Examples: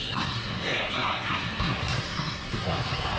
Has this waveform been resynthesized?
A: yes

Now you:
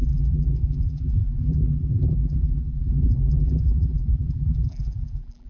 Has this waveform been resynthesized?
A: yes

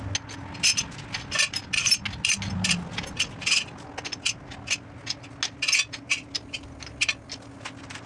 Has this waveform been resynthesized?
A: no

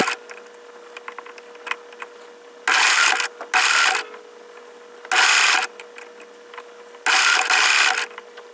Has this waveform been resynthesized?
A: no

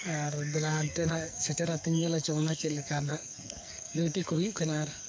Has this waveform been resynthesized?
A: yes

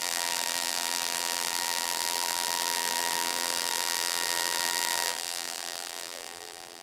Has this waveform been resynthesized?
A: yes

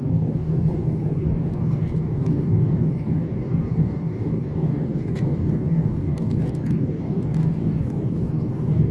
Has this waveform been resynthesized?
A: yes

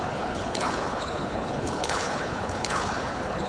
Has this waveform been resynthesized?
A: yes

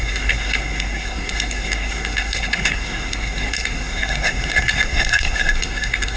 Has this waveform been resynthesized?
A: yes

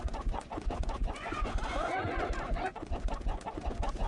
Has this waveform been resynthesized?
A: yes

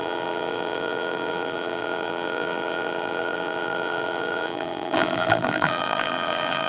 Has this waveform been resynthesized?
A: yes